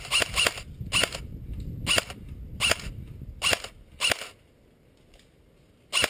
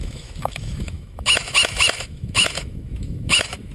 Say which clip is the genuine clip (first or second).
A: first